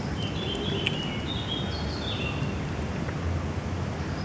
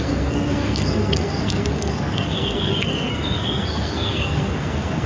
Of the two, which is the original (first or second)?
first